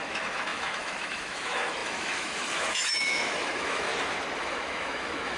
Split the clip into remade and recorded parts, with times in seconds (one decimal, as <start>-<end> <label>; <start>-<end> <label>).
0.0-3.9 remade; 3.9-4.4 recorded; 4.4-5.4 remade

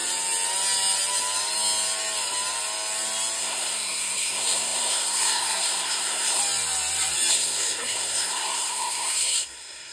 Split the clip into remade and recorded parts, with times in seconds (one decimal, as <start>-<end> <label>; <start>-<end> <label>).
0.0-3.4 recorded; 3.4-6.4 remade; 6.4-7.3 recorded; 7.3-9.9 remade

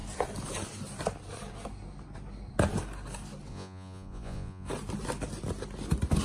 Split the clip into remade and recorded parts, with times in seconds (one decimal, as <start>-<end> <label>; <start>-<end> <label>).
0.0-3.5 recorded; 3.5-4.7 remade; 4.7-6.2 recorded